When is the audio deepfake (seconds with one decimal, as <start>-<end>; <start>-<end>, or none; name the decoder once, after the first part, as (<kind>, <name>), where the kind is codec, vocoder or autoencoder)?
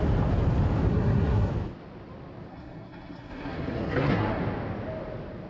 0.9-1.5 (codec, SNAC); 2.5-4.4